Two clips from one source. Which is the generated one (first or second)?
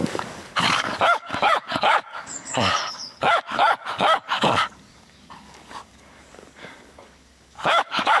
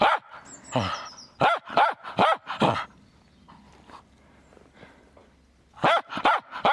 first